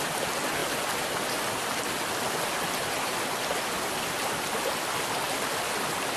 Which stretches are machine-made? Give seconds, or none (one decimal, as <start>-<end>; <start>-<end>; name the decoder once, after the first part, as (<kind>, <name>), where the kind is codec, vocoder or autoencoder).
none